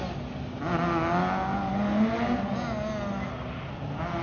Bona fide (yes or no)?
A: yes